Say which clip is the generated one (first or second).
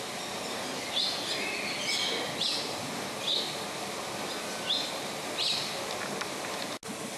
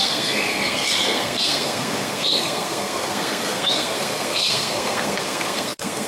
second